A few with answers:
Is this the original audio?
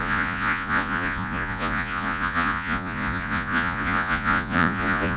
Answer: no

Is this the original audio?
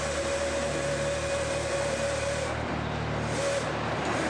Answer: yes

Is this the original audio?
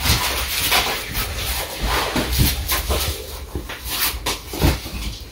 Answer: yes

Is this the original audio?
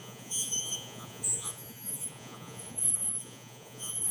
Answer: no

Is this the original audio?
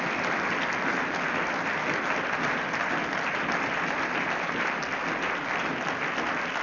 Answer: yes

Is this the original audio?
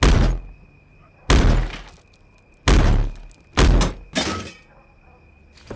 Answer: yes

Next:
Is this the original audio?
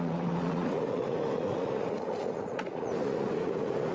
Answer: no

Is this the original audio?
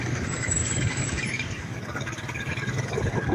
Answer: no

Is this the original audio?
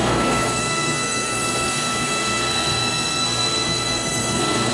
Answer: no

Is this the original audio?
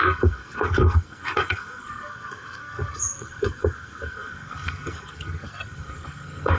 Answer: no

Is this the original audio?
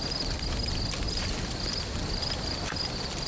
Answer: yes